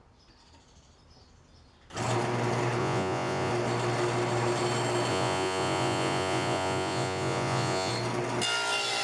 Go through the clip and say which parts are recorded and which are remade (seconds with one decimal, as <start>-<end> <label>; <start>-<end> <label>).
0.0-2.8 recorded; 2.8-3.5 remade; 3.5-5.1 recorded; 5.1-7.9 remade; 7.9-9.0 recorded